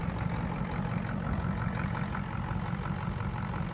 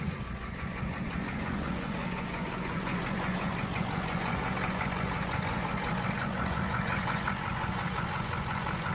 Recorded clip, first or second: first